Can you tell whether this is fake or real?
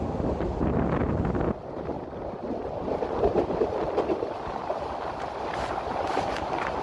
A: real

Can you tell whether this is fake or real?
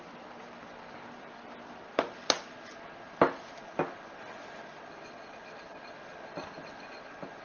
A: real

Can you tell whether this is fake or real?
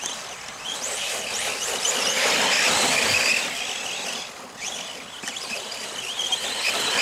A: fake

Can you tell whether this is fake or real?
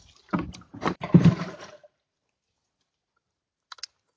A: fake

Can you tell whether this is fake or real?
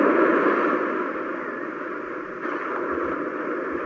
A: real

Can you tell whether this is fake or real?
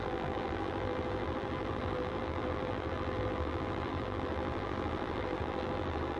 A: fake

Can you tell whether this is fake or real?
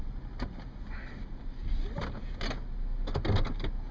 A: real